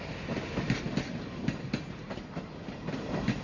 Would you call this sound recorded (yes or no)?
yes